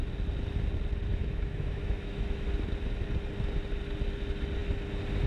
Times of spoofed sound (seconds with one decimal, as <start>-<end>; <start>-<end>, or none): 1.1-2.5